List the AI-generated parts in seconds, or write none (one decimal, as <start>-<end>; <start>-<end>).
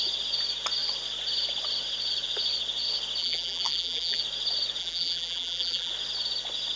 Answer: 3.2-4.2; 4.8-5.9